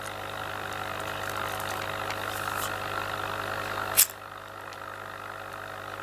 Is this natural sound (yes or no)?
yes